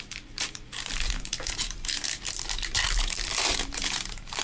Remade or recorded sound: remade